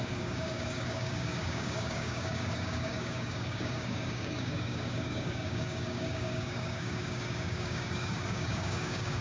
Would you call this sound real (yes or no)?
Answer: no